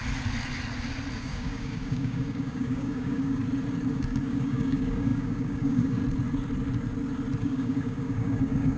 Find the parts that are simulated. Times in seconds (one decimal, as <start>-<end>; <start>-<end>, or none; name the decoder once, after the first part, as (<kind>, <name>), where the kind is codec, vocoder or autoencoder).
1.2-3.4 (codec, DAC); 3.9-6.0; 7.4-8.8